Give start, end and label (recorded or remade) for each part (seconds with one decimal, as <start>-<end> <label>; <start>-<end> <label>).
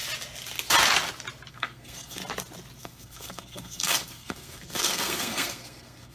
0.0-1.5 recorded; 1.5-2.2 remade; 2.2-2.8 recorded; 2.8-6.1 remade